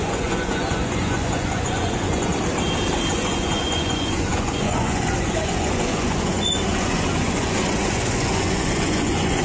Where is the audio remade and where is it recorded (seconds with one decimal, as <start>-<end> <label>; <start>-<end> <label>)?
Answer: 0.0-2.3 remade; 2.3-3.1 recorded; 3.1-9.4 remade